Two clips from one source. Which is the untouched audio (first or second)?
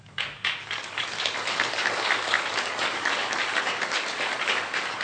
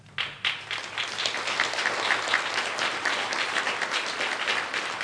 second